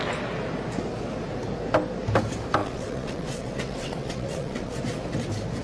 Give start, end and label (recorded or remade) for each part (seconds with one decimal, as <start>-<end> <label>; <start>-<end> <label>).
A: 0.0-2.6 recorded; 2.6-4.8 remade; 4.8-5.6 recorded